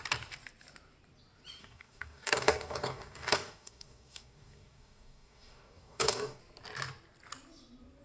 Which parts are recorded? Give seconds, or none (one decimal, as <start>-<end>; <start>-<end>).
0.0-1.6; 6.4-8.0